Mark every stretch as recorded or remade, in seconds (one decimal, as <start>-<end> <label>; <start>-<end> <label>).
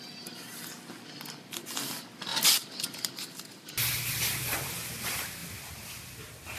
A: 0.0-2.3 recorded; 2.3-3.1 remade; 3.1-5.4 recorded; 5.4-6.6 remade